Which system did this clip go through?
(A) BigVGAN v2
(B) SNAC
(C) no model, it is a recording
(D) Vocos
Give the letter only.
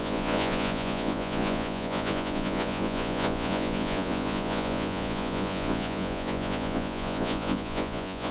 D